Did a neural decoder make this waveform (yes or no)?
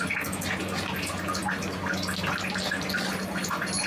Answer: no